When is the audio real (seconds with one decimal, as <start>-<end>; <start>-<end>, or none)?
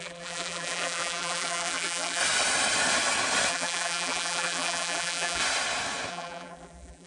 2.2-3.5; 5.4-6.1